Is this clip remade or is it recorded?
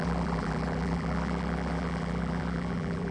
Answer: remade